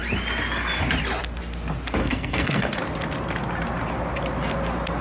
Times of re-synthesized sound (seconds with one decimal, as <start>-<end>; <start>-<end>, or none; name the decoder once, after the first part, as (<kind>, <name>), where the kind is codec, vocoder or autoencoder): 2.0-2.8 (codec, SNAC)